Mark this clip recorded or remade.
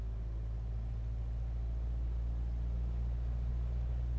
recorded